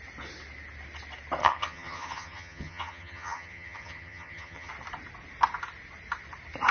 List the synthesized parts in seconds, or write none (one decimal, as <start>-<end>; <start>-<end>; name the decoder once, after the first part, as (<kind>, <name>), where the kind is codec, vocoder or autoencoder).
1.4-4.7 (vocoder, HiFi-GAN)